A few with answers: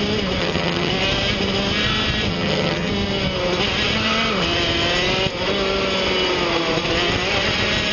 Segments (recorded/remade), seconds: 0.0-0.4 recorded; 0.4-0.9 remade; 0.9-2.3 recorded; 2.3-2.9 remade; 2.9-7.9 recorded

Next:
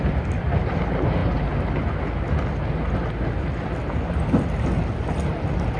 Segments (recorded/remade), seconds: 0.0-5.8 recorded

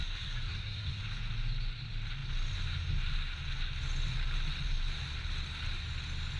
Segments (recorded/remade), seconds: 0.0-1.0 remade; 1.0-6.4 recorded

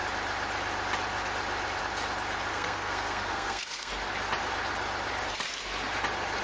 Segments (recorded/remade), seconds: 0.0-2.5 recorded; 2.5-3.9 remade; 3.9-6.4 recorded

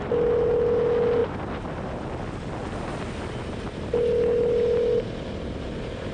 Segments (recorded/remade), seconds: 0.0-6.1 recorded

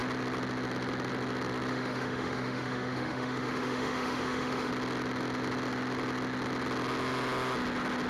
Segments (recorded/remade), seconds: 0.0-1.7 recorded; 1.7-4.7 remade; 4.7-8.1 recorded